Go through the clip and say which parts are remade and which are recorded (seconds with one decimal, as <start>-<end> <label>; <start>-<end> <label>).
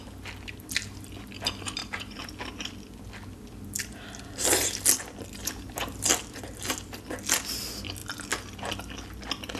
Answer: 0.0-1.8 recorded; 1.8-2.3 remade; 2.3-5.4 recorded; 5.4-6.1 remade; 6.1-9.6 recorded